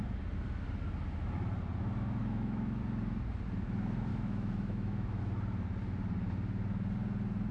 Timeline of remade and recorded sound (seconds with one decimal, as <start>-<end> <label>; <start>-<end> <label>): 0.0-2.2 recorded; 2.2-2.8 remade; 2.8-4.1 recorded; 4.1-5.2 remade; 5.2-7.5 recorded